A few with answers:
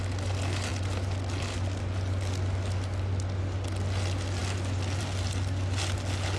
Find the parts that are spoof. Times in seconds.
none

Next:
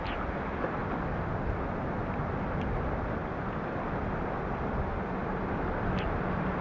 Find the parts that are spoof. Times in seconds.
none

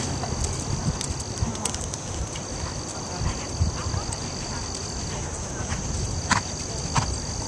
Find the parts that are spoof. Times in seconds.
3.8-5.8 (vocoder, BigVGAN v2)

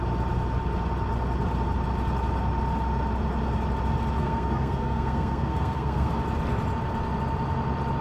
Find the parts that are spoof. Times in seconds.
4.2-6.2 (codec, SNAC)

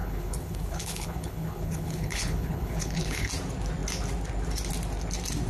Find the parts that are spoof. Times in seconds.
0.0-3.3 (codec, HILCodec)

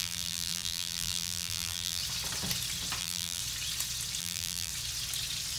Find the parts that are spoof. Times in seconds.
0.0-2.0 (vocoder, BigVGAN v2); 3.0-3.4; 4.2-4.7

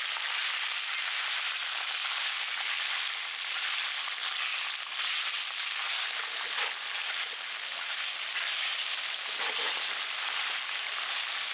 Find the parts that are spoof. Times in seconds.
none